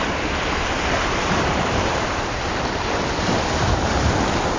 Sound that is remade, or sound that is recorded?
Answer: recorded